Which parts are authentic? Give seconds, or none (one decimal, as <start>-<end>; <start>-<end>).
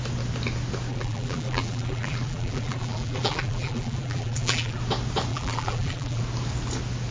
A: 0.0-0.9; 4.8-5.3; 6.2-7.1